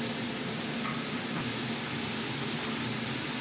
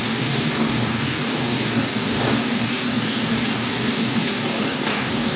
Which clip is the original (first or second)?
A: first